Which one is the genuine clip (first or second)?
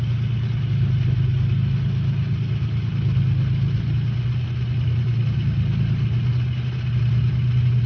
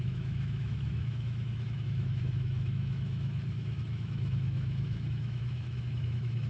first